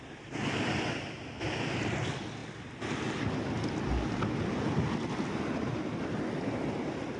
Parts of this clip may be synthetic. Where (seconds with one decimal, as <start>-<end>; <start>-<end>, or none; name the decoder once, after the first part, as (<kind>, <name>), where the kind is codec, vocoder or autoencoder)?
none